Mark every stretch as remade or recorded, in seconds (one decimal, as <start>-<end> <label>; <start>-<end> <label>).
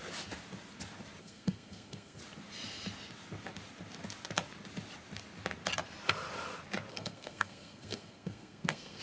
0.0-1.2 recorded; 1.2-2.2 remade; 2.2-6.9 recorded; 6.9-9.0 remade